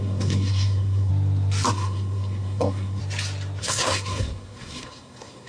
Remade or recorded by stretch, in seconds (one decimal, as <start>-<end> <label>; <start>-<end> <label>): 0.0-1.1 remade; 1.1-1.7 recorded; 1.7-3.0 remade; 3.0-3.6 recorded; 3.6-5.5 remade